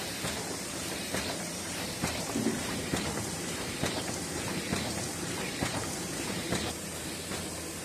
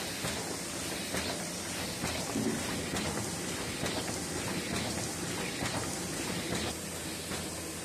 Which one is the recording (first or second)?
second